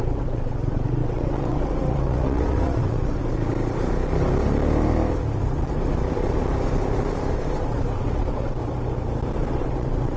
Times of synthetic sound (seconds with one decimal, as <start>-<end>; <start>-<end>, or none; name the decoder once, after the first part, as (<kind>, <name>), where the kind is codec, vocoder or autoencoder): 0.0-3.2 (vocoder, WaveNeXt); 7.3-8.6; 9.5-10.2